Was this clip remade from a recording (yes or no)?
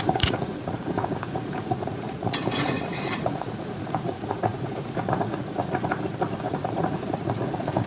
yes